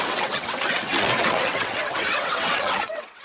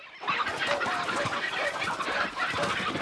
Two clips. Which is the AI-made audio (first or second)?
first